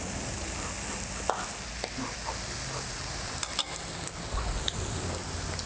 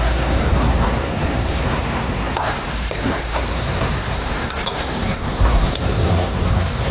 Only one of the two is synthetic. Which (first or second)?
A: second